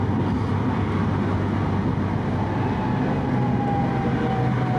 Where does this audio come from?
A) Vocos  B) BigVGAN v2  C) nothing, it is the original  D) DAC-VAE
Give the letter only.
C